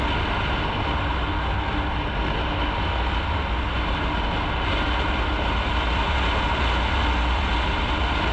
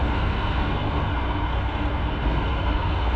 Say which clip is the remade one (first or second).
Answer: second